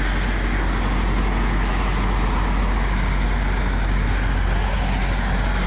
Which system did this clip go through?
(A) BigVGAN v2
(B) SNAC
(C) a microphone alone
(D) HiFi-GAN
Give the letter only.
C